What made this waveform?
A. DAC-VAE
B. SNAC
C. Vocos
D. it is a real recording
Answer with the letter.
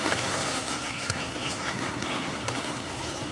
B